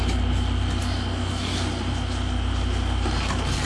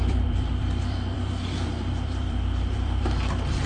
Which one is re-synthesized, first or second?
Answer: second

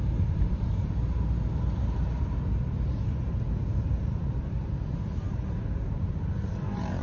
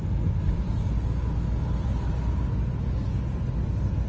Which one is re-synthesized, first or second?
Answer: first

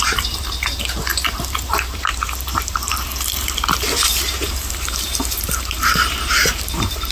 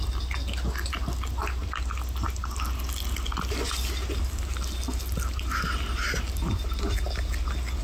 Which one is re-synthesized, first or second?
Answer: first